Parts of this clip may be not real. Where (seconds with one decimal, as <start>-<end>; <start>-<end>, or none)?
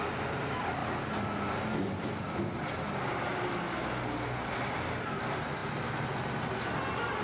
none